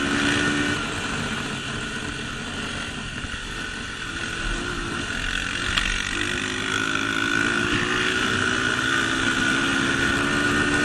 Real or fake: real